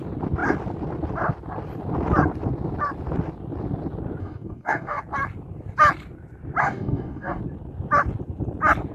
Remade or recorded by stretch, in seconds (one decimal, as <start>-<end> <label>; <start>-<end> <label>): 0.0-4.2 recorded; 4.2-5.0 remade; 5.0-6.6 recorded; 6.6-7.4 remade; 7.4-8.9 recorded